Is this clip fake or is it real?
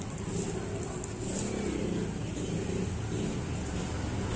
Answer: real